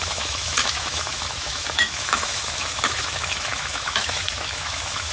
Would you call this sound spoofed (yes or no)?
yes